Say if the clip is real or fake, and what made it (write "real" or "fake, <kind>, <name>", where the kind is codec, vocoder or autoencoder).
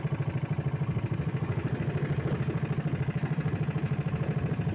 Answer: real